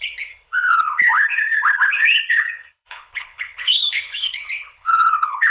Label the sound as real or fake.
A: fake